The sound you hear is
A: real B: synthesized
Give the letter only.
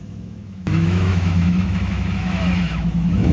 B